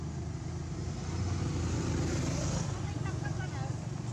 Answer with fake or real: real